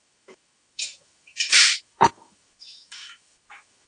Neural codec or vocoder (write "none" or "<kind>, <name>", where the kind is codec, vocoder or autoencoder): autoencoder, DAC-VAE